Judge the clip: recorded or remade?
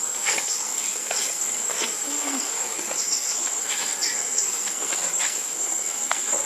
remade